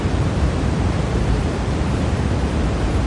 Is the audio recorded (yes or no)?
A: no